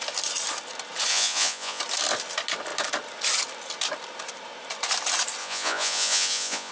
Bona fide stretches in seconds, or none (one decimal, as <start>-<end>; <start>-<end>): 0.0-1.1; 1.8-5.4